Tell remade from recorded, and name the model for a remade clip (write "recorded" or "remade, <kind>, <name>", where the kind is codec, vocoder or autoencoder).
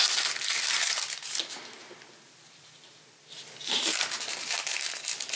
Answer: recorded